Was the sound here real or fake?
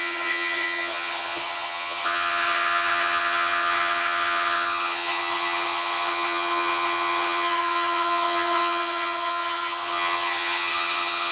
fake